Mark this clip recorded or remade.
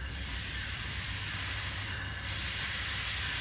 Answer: recorded